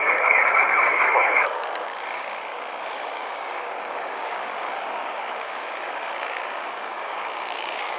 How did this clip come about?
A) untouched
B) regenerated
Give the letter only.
B